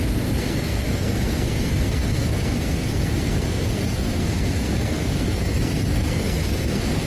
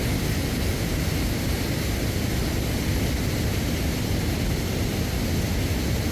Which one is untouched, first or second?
second